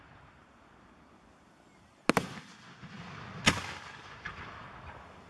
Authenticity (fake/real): real